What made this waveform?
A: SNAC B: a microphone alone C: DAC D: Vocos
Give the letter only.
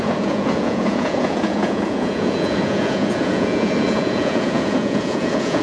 D